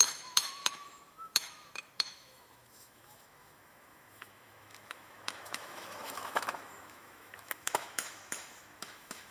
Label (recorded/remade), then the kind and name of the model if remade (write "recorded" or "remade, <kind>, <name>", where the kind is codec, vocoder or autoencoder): remade, autoencoder, DAC-VAE